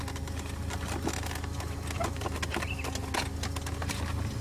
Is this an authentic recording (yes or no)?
yes